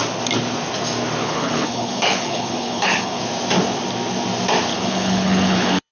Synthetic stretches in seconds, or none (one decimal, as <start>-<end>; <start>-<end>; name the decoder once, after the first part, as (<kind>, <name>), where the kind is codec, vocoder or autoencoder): 1.2-3.2 (codec, HILCodec); 4.7-5.9